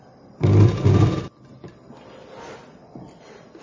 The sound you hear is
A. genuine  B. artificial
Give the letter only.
A